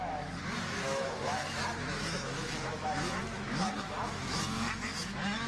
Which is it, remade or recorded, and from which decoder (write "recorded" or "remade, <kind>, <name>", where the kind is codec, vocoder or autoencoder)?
remade, autoencoder, DAC-VAE